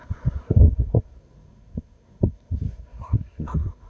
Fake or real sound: fake